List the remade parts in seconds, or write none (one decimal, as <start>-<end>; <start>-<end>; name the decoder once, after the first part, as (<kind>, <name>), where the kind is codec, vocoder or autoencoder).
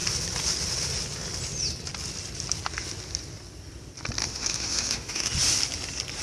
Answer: 4.2-5.3 (autoencoder, DAC-VAE)